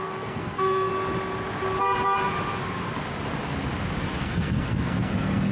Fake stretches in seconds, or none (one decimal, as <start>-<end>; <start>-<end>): 0.0-0.9; 4.2-5.5

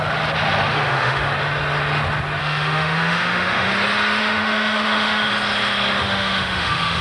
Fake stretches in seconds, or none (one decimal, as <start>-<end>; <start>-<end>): 0.7-1.3; 2.4-3.7; 4.2-5.3; 6.0-7.0

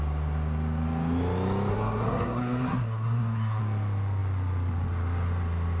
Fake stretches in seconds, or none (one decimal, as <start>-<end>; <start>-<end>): 1.7-3.6

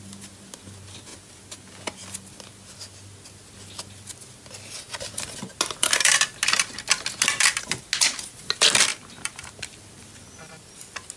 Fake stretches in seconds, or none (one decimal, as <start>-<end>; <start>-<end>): 8.9-9.5

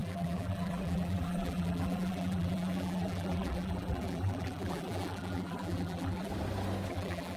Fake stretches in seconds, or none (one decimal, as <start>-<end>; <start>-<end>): 0.0-6.3; 6.9-7.4

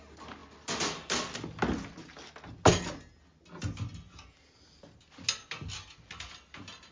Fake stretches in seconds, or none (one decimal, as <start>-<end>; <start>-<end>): none

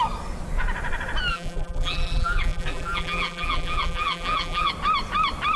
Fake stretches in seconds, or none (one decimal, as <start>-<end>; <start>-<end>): 1.3-4.7